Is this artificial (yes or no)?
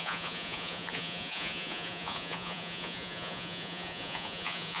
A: yes